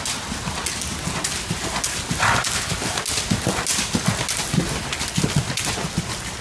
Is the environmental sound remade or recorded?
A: recorded